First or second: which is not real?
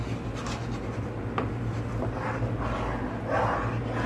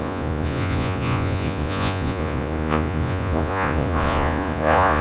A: second